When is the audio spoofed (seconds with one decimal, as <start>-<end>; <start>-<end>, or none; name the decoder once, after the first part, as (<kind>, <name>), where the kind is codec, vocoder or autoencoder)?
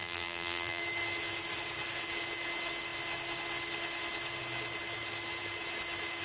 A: 0.0-0.8 (vocoder, BigVGAN v2)